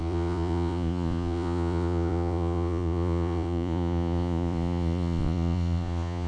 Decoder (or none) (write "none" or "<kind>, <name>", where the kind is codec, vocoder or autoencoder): vocoder, Vocos